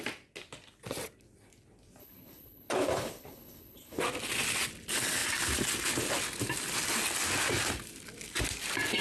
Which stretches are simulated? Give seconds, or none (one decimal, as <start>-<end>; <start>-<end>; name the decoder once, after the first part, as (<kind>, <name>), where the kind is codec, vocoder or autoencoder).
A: 2.0-4.0 (codec, HILCodec)